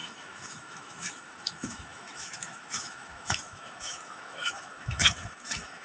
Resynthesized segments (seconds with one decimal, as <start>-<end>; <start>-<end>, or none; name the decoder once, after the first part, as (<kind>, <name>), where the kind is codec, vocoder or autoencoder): 0.0-5.8 (autoencoder, DAC-VAE)